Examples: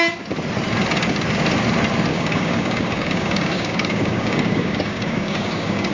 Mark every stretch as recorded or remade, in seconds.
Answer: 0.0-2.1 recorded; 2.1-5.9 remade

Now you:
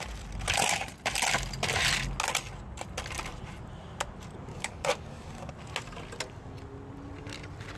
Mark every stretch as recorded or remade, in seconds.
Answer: 0.0-4.5 recorded; 4.5-5.5 remade; 5.5-7.8 recorded

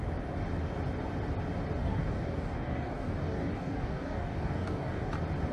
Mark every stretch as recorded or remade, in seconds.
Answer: 0.0-1.8 recorded; 1.8-5.1 remade; 5.1-5.5 recorded

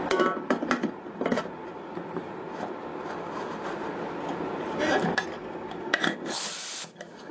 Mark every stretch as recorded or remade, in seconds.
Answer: 0.0-5.4 recorded; 5.4-6.0 remade; 6.0-7.3 recorded

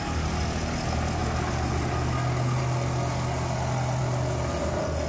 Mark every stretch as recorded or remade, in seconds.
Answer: 0.0-5.1 recorded

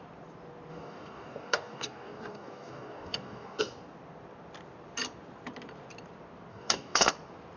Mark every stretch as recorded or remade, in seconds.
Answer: 0.0-0.7 recorded; 0.7-3.6 remade; 3.6-6.5 recorded; 6.5-7.1 remade; 7.1-7.6 recorded

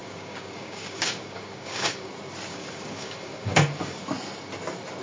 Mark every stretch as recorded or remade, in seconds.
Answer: 0.0-2.1 remade; 2.1-2.5 recorded; 2.5-4.0 remade; 4.0-5.0 recorded